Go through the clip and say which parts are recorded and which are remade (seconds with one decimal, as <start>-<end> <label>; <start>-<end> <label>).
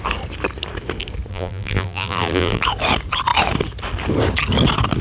0.0-1.3 recorded; 1.3-2.6 remade; 2.6-5.0 recorded